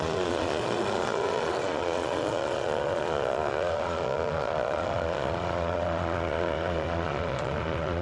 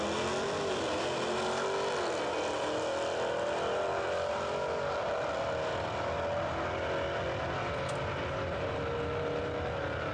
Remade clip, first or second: first